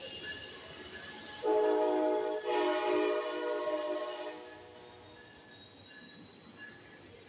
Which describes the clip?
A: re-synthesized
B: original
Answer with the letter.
B